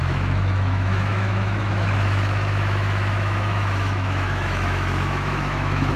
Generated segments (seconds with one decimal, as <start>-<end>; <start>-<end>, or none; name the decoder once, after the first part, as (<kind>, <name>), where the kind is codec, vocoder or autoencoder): 0.0-6.0 (autoencoder, DAC-VAE)